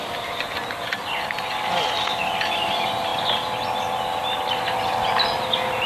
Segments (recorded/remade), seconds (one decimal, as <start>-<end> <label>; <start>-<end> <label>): 0.0-5.9 recorded